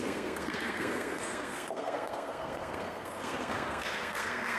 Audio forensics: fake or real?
fake